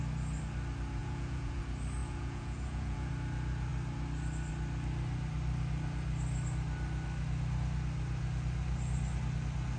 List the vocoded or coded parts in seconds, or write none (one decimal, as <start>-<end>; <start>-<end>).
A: 1.0-1.6; 2.0-3.1